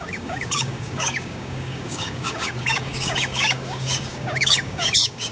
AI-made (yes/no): yes